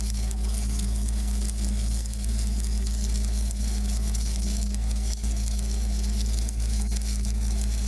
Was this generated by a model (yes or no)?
yes